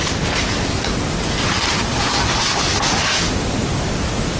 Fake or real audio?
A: real